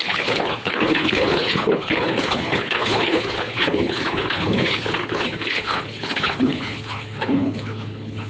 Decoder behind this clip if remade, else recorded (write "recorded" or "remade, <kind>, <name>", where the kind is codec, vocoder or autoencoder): remade, codec, HILCodec